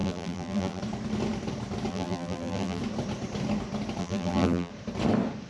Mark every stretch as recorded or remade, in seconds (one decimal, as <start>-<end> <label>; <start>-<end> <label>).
0.0-0.8 remade; 0.8-1.9 recorded; 1.9-2.8 remade; 2.8-4.0 recorded; 4.0-4.7 remade; 4.7-5.5 recorded